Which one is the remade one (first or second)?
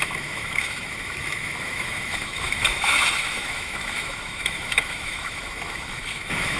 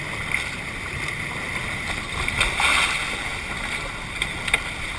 first